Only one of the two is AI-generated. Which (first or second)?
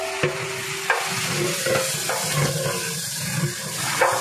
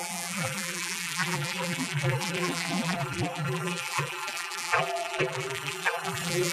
second